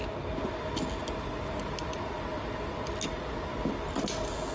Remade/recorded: recorded